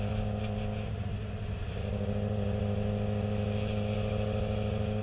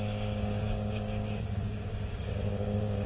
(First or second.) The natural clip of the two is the first